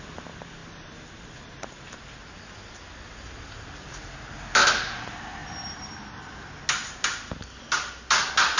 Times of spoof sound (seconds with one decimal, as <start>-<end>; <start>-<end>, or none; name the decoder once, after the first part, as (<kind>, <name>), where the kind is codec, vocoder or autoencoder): none